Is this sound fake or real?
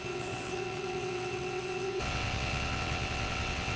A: fake